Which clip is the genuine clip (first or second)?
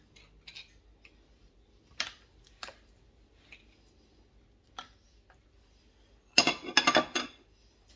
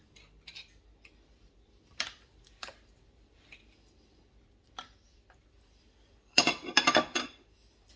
first